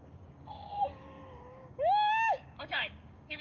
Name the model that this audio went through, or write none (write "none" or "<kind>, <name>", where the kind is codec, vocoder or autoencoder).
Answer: codec, DAC